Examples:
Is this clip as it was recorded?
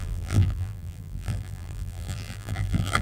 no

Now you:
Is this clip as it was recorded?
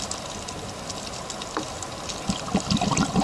yes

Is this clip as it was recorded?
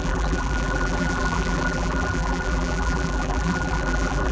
no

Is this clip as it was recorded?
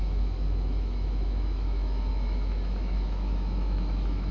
no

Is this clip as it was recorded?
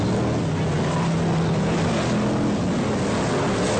yes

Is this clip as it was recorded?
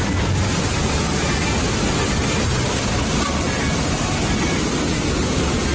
yes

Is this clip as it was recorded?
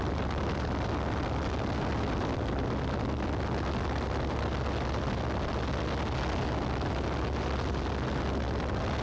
yes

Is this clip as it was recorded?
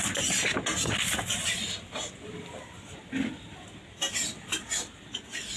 yes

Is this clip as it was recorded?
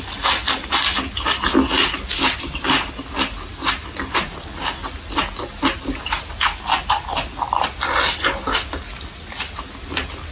yes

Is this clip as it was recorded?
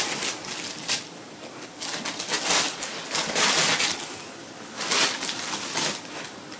yes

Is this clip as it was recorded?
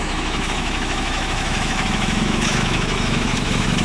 no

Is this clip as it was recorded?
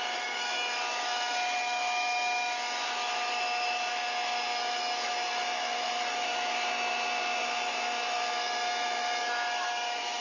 no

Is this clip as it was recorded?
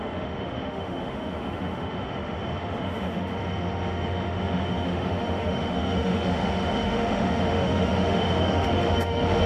no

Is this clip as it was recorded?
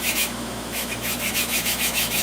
no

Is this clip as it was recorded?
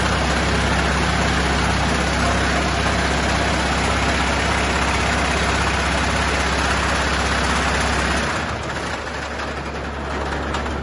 yes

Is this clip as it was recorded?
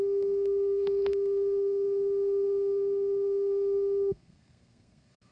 no